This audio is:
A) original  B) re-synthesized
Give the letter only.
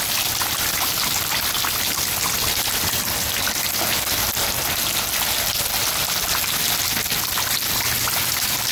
A